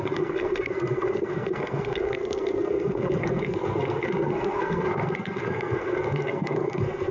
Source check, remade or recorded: remade